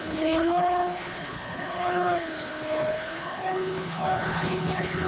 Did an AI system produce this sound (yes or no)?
yes